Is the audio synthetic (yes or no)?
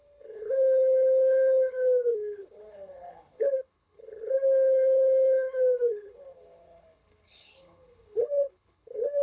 yes